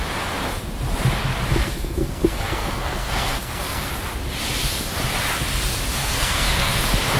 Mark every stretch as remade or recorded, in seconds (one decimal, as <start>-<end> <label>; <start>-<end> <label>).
0.0-1.6 recorded; 1.6-3.9 remade; 3.9-6.0 recorded; 6.0-6.8 remade; 6.8-7.2 recorded

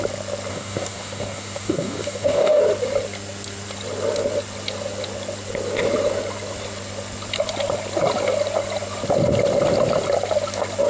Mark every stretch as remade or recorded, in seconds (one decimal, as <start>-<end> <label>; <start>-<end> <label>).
0.0-0.5 recorded; 0.5-2.6 remade; 2.6-10.9 recorded

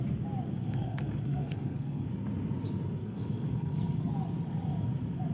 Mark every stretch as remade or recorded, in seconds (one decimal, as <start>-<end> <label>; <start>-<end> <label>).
0.0-0.6 recorded; 0.6-2.1 remade; 2.1-3.0 recorded; 3.0-4.1 remade; 4.1-5.3 recorded

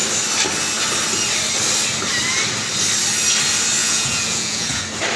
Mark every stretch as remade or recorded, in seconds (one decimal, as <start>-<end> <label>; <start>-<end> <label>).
0.0-3.8 recorded; 3.8-4.8 remade; 4.8-5.2 recorded

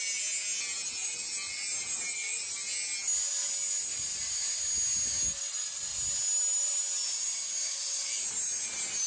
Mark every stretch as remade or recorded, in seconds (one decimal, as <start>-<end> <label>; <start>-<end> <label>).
0.0-9.1 recorded

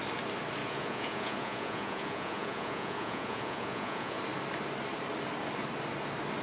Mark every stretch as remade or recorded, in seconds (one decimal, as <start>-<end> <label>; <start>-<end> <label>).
0.0-0.6 recorded; 0.6-4.2 remade; 4.2-6.4 recorded